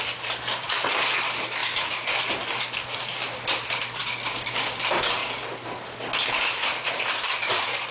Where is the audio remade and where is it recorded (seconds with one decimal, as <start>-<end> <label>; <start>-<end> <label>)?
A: 0.0-4.0 recorded; 4.0-4.8 remade; 4.8-7.9 recorded